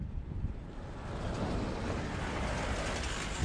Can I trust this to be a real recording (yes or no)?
yes